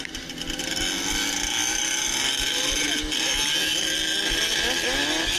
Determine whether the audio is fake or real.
real